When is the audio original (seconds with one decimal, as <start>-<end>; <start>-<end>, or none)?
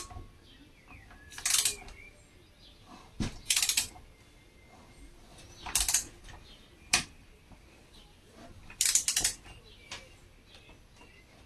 0.0-11.5